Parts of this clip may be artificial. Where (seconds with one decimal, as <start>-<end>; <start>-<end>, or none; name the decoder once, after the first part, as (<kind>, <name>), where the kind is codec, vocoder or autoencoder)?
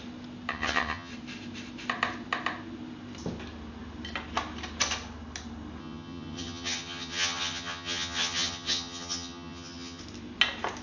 0.5-1.1 (vocoder, HiFi-GAN); 5.8-10.0